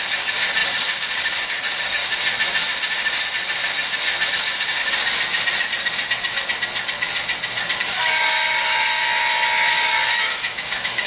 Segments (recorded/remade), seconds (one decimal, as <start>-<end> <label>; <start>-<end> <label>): 0.0-2.0 remade; 2.0-4.3 recorded; 4.3-4.8 remade; 4.8-7.8 recorded; 7.8-9.0 remade; 9.0-9.7 recorded; 9.7-11.1 remade